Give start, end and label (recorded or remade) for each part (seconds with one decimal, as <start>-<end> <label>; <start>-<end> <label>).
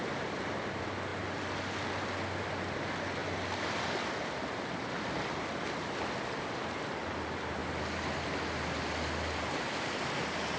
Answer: 0.0-7.6 remade; 7.6-9.9 recorded; 9.9-10.6 remade